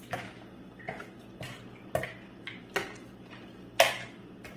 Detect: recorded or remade recorded